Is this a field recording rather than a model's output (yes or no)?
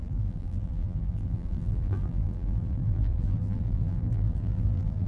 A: no